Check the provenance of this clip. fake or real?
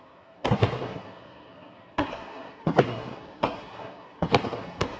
fake